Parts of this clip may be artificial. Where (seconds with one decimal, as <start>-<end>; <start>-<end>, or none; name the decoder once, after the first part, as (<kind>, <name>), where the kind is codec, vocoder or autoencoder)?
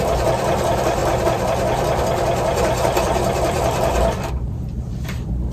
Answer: 0.0-5.5 (vocoder, BigVGAN v2)